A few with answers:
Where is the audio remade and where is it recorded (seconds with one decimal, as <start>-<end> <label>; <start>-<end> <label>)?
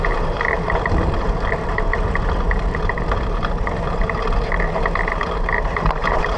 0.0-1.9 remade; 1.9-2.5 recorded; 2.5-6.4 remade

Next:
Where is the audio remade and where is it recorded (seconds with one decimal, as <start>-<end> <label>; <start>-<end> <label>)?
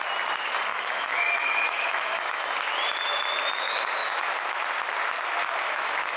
0.0-0.7 recorded; 0.7-2.4 remade; 2.4-4.0 recorded; 4.0-4.6 remade; 4.6-5.4 recorded; 5.4-6.2 remade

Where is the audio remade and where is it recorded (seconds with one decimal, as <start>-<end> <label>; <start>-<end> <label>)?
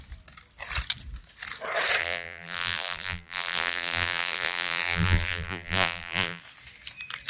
0.0-2.0 recorded; 2.0-6.4 remade; 6.4-7.3 recorded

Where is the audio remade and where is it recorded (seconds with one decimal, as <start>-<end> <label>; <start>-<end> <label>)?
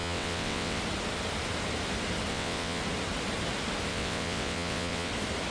0.0-0.8 remade; 0.8-2.3 recorded; 2.3-2.8 remade; 2.8-3.9 recorded; 3.9-5.1 remade; 5.1-5.5 recorded